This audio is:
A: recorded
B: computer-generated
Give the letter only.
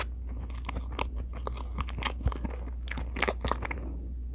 A